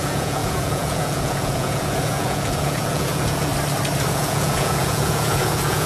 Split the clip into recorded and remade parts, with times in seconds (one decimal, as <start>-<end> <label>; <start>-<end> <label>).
0.0-3.5 remade; 3.5-4.1 recorded; 4.1-5.9 remade